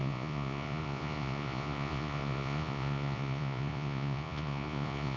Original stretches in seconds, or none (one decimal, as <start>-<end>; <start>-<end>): none